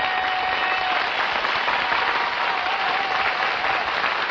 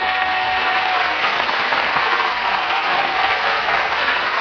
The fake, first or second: second